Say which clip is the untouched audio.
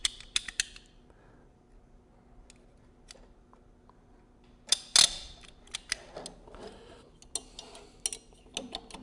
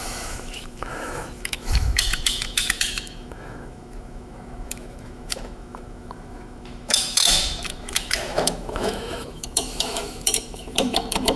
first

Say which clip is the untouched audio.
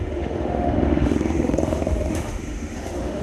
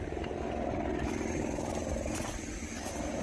second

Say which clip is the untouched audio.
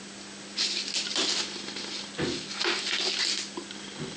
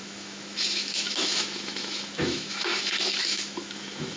first